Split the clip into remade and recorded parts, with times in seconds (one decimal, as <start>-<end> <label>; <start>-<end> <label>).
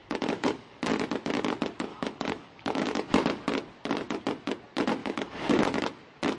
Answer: 0.0-0.8 remade; 0.8-1.9 recorded; 1.9-3.1 remade; 3.1-5.0 recorded; 5.0-5.6 remade; 5.6-6.4 recorded